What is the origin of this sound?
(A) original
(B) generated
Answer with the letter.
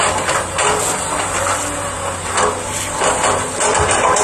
A